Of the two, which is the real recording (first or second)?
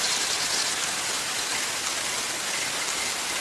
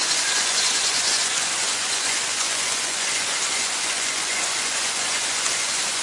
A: first